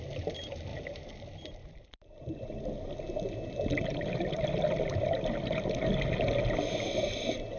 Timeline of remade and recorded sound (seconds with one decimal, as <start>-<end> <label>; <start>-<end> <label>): 0.0-0.7 recorded; 0.7-3.0 remade; 3.0-7.6 recorded